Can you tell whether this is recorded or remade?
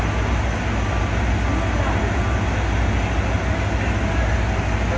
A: recorded